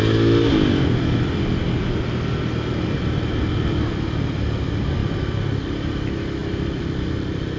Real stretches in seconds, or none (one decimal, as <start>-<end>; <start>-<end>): 0.0-6.4